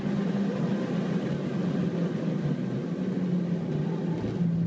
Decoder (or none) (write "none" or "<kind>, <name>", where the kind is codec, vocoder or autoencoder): none